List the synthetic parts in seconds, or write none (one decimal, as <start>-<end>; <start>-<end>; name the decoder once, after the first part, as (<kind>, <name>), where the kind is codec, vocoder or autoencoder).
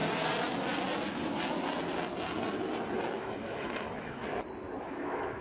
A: 3.1-4.2 (autoencoder, DAC-VAE); 4.8-5.4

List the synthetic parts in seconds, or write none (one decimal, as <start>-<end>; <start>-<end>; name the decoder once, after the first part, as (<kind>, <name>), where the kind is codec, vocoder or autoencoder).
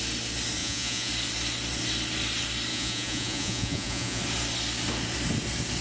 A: 0.6-1.1 (vocoder, Vocos); 2.7-4.2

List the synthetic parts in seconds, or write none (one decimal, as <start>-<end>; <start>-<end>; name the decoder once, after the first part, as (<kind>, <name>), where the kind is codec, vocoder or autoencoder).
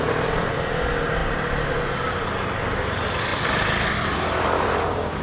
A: none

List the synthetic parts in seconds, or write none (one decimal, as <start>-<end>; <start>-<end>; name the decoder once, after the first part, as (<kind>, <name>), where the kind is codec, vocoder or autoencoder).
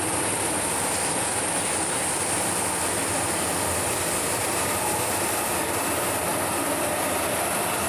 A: none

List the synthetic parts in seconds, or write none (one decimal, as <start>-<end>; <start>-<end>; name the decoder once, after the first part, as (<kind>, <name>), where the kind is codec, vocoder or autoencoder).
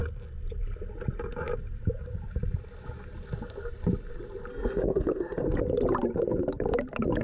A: 4.5-5.4 (codec, SNAC)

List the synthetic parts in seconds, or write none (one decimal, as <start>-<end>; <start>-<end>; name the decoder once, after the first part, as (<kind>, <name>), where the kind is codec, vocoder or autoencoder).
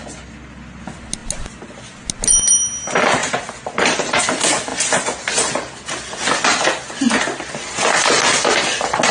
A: 3.2-4.2 (vocoder, BigVGAN v2)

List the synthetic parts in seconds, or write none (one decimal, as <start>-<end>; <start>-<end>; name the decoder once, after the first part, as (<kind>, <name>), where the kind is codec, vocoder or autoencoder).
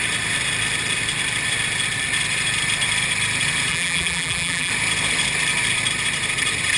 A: 3.7-4.7 (vocoder, BigVGAN v2)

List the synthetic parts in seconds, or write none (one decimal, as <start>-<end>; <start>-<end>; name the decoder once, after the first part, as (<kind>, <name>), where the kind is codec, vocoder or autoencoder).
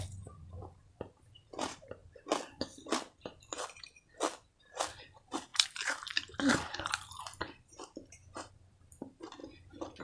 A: 0.0-2.0 (vocoder, BigVGAN v2); 5.0-9.4